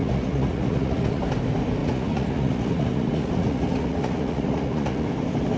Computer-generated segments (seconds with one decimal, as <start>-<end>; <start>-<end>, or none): 0.0-1.2; 1.8-5.1